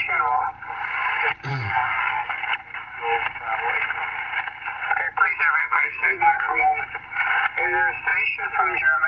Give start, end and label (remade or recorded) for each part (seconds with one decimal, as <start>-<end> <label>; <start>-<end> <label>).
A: 0.0-1.5 recorded; 1.5-2.4 remade; 2.4-5.6 recorded; 5.6-6.8 remade; 6.8-9.1 recorded